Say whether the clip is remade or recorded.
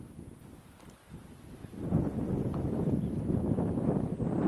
recorded